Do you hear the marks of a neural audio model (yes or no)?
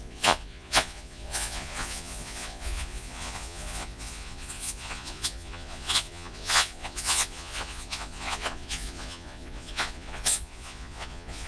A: yes